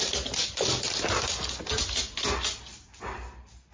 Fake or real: real